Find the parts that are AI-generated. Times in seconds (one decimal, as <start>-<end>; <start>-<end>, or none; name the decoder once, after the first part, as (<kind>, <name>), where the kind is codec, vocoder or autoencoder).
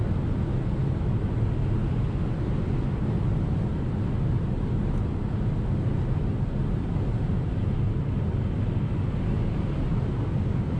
none